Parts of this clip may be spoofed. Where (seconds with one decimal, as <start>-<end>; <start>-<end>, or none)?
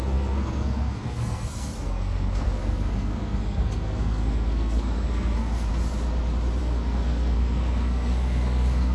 0.0-5.7; 6.6-8.9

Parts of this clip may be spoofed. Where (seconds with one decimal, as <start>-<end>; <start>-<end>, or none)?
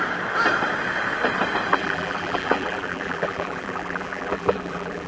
1.7-5.1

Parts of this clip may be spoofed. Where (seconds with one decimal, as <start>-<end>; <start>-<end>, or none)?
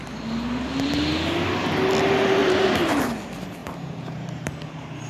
2.4-3.0; 3.6-5.1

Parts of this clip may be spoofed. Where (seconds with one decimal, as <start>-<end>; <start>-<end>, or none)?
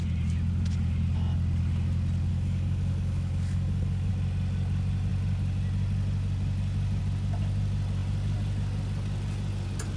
2.3-4.1